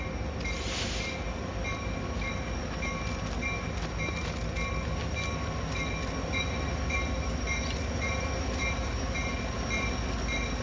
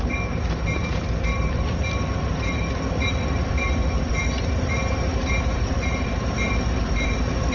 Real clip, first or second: first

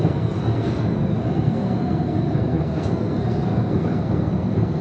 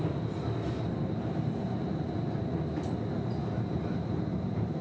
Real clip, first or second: second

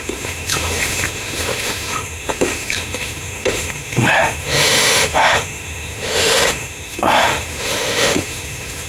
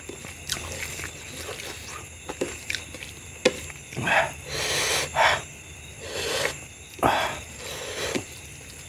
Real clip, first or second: second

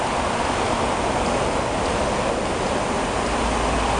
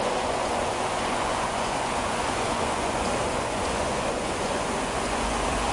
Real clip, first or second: first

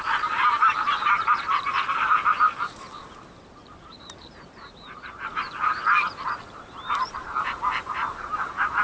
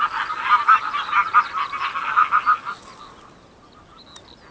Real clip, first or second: second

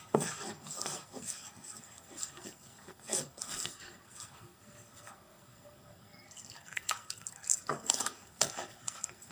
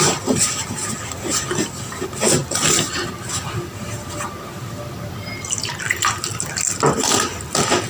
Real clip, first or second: second